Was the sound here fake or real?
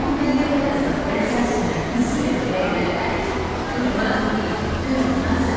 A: real